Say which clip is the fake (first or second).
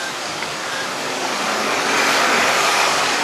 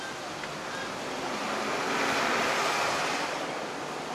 first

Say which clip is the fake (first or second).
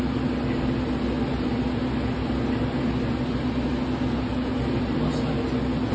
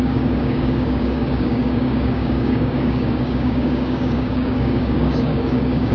second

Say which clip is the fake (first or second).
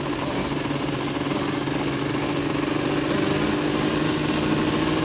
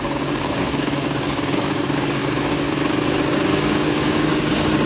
second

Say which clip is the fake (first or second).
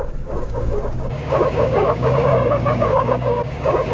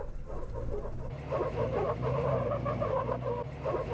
first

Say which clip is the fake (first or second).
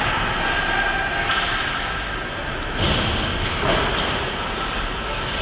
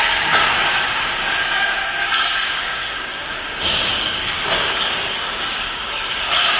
second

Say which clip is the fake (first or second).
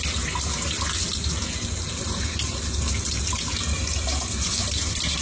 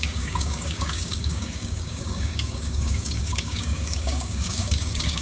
second